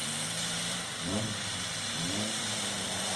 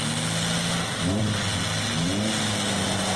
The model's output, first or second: first